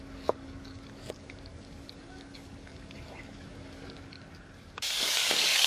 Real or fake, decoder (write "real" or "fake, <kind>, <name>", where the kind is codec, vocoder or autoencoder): fake, codec, DAC